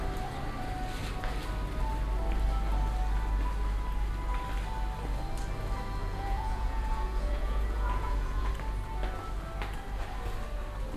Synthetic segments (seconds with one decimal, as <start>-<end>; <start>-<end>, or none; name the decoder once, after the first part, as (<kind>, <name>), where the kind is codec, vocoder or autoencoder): 6.0-8.5 (vocoder, Vocos)